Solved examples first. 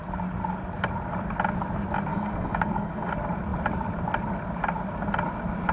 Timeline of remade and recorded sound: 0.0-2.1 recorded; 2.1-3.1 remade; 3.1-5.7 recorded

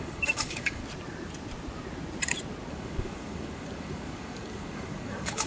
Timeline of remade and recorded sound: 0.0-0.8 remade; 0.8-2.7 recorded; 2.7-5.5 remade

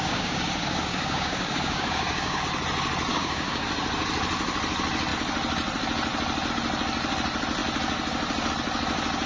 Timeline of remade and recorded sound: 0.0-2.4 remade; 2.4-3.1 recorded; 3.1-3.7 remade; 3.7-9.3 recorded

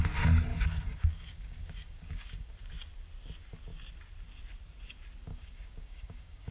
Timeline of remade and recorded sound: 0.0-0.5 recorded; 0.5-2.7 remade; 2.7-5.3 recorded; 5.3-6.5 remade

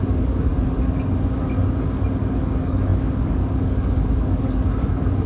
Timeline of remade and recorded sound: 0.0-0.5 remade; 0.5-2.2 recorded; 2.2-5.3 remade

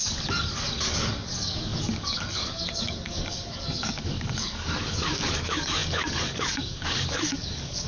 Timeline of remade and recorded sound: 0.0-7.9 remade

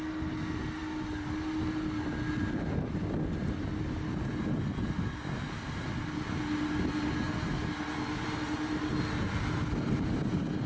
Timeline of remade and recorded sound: 0.0-10.7 recorded